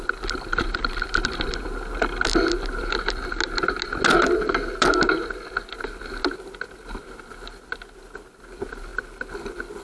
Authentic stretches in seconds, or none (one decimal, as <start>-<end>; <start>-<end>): 0.0-9.8